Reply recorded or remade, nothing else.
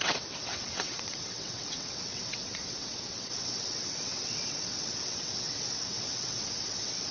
remade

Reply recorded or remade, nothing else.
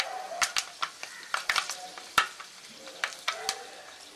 recorded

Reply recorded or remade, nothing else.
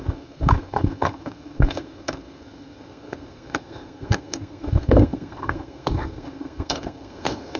remade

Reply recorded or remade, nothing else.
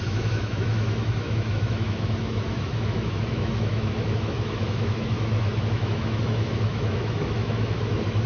remade